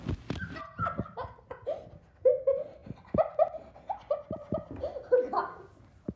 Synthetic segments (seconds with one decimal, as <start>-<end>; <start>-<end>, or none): none